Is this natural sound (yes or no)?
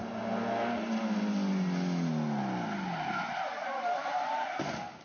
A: yes